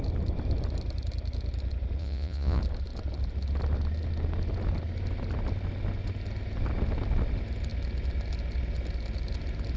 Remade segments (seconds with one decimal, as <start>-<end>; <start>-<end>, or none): 2.0-2.6